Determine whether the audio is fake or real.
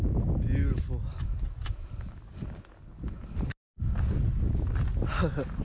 real